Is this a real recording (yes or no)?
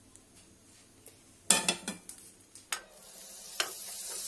yes